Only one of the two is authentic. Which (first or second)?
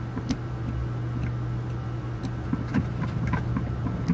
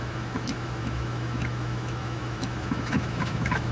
first